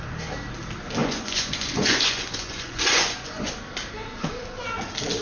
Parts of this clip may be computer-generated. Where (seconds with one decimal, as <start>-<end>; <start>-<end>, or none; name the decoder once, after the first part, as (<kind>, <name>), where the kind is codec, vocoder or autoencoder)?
1.0-3.5 (vocoder, Vocos)